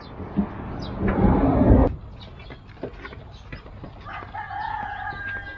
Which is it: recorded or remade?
recorded